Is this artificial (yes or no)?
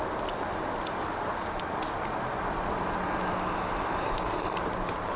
no